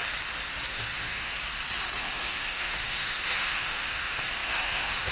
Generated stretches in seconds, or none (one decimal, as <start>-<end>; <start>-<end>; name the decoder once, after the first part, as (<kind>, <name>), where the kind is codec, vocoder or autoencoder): 0.7-1.3 (autoencoder, DAC-VAE); 2.0-5.1